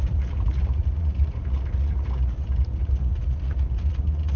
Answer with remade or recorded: remade